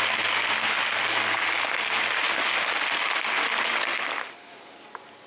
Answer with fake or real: real